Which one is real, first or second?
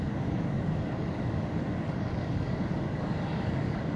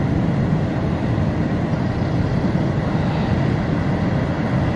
second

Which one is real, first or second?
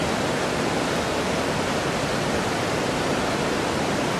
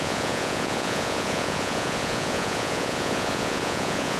first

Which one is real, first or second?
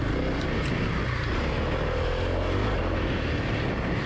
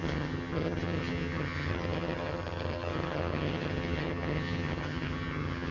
first